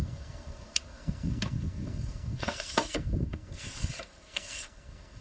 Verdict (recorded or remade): remade